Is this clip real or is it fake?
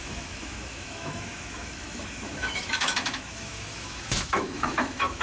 fake